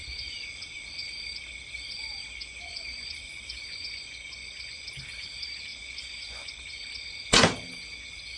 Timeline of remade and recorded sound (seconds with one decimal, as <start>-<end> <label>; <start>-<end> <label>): 0.0-2.4 recorded; 2.4-4.9 remade; 4.9-5.7 recorded; 5.7-6.6 remade; 6.6-8.4 recorded